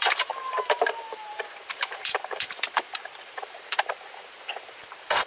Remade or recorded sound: remade